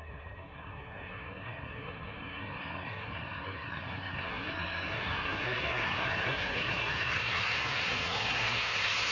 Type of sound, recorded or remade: remade